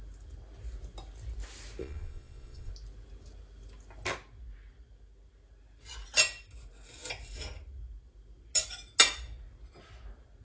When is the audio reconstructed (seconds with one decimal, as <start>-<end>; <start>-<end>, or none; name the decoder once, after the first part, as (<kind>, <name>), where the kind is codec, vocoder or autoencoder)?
1.8-2.7 (vocoder, Vocos)